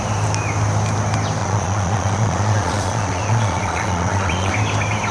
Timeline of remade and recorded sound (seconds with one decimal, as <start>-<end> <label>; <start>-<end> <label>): 0.0-1.4 recorded; 1.4-4.5 remade; 4.5-5.1 recorded